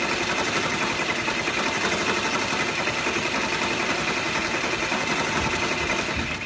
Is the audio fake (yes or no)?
no